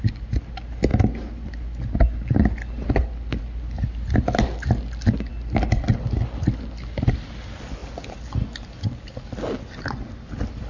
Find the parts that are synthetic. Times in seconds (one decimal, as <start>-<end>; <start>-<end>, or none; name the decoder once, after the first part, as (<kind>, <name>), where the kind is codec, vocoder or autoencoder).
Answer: none